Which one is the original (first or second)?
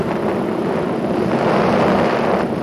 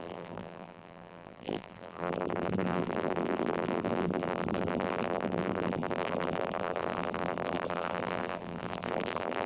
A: first